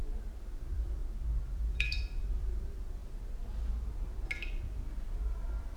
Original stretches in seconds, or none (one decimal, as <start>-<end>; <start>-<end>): 0.0-0.5; 1.0-1.5; 3.0-4.5